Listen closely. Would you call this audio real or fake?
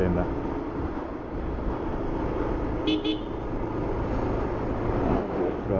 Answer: real